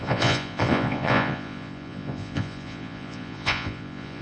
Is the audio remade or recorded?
remade